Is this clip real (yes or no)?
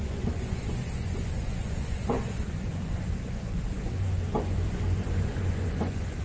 no